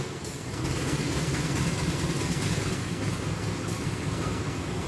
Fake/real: fake